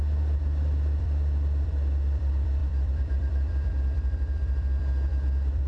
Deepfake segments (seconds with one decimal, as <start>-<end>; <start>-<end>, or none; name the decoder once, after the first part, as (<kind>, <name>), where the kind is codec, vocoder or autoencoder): 0.0-5.7 (vocoder, BigVGAN v2)